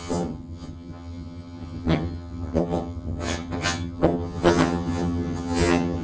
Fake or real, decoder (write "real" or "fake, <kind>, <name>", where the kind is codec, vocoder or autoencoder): fake, vocoder, HiFi-GAN